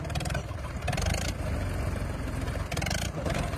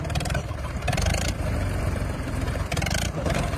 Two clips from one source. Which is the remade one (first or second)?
second